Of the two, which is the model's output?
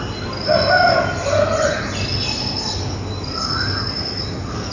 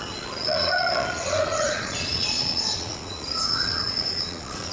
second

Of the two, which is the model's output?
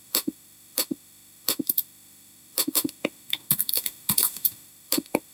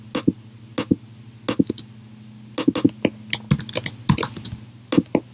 first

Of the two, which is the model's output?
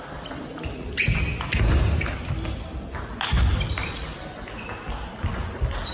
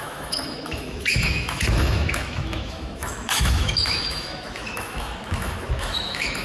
second